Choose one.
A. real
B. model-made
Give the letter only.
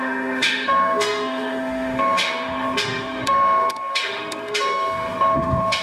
B